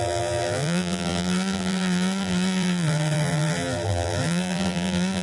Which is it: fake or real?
fake